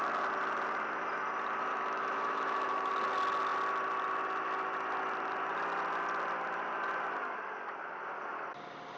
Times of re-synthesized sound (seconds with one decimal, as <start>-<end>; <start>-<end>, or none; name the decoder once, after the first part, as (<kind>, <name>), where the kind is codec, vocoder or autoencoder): 1.7-2.9 (autoencoder, DAC-VAE)